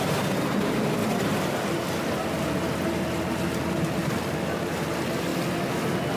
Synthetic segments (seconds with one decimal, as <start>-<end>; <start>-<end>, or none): 1.0-4.7